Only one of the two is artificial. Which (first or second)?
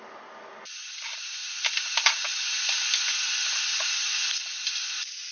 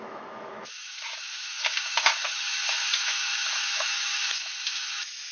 second